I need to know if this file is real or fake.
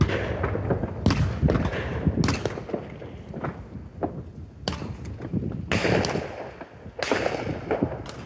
real